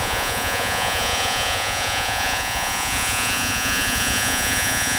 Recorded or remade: remade